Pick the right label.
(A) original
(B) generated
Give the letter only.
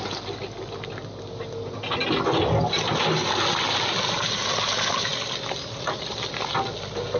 A